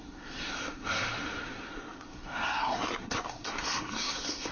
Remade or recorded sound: remade